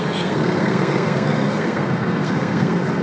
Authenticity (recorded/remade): remade